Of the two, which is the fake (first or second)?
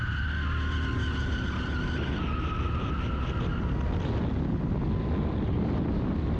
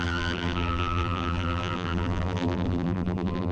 second